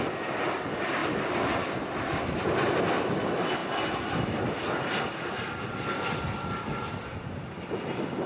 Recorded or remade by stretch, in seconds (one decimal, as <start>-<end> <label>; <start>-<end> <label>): 0.0-8.3 recorded

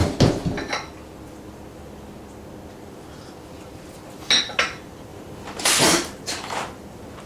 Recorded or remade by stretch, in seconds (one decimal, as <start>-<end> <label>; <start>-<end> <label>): 0.0-4.4 recorded; 4.4-5.1 remade; 5.1-5.6 recorded; 5.6-7.3 remade

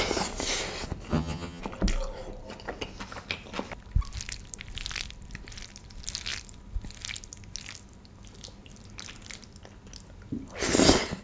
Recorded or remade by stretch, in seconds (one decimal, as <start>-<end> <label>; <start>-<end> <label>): 0.0-1.1 recorded; 1.1-1.6 remade; 1.6-11.2 recorded

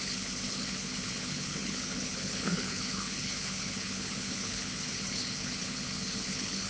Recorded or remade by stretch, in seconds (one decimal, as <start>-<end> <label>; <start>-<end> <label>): 0.0-6.7 remade

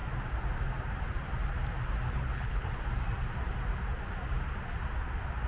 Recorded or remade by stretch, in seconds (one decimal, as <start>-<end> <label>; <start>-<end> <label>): 0.0-2.1 recorded; 2.1-2.8 remade; 2.8-5.5 recorded

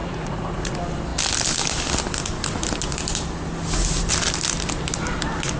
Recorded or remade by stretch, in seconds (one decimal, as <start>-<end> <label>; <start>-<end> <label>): 0.0-0.7 remade; 0.7-5.6 recorded

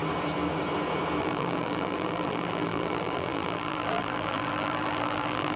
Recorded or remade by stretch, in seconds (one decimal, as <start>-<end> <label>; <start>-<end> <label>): 0.0-1.2 recorded; 1.2-5.6 remade

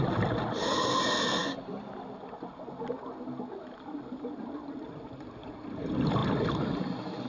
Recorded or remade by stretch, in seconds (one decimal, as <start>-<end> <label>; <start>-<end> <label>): 0.0-6.2 recorded; 6.2-6.7 remade; 6.7-7.3 recorded